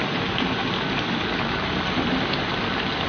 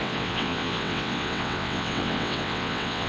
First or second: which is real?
first